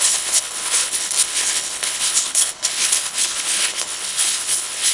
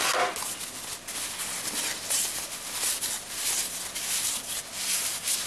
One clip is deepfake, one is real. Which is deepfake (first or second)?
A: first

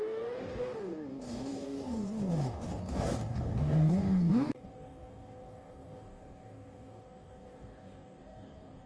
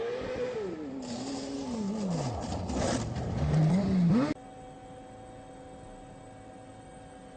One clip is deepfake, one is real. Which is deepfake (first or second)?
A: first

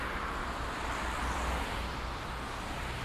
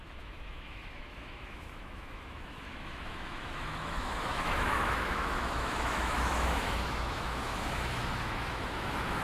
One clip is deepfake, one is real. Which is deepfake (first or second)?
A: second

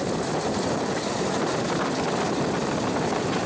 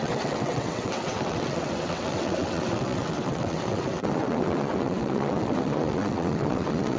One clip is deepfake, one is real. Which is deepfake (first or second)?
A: second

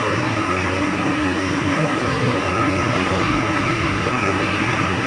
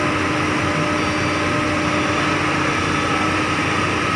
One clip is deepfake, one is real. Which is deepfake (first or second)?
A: first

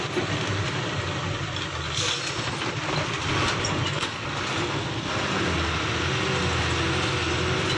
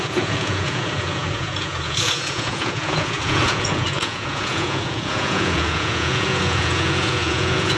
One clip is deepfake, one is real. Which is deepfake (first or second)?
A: second